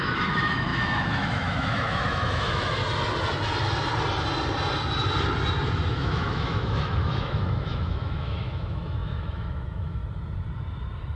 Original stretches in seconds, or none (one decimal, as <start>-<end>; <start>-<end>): 2.8-5.9; 10.0-11.2